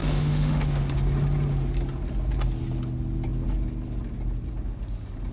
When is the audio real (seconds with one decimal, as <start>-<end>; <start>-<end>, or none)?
0.8-5.3